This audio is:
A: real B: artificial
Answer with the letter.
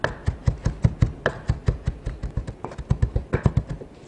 A